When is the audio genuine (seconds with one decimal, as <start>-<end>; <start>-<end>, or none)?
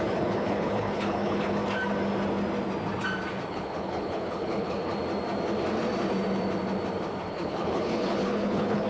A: 1.6-3.5; 4.9-7.2